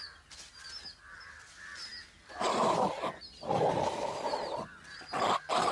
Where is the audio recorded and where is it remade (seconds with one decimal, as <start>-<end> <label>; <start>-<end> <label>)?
0.0-5.7 recorded